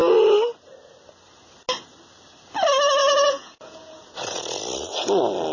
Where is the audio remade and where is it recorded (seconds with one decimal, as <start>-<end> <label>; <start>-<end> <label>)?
0.0-3.0 recorded; 3.0-4.0 remade; 4.0-5.5 recorded

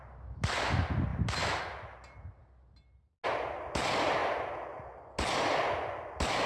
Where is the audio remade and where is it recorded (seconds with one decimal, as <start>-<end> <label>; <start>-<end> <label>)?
0.0-6.5 recorded

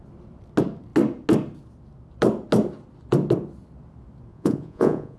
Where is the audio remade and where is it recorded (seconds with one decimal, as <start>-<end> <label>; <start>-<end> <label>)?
0.0-4.3 recorded; 4.3-5.2 remade

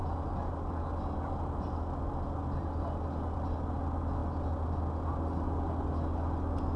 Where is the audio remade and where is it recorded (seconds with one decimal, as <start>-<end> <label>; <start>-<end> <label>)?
0.0-6.8 recorded